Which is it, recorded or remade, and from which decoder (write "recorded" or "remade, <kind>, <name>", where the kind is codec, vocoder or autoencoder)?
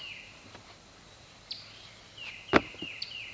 recorded